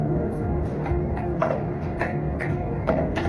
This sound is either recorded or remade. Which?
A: remade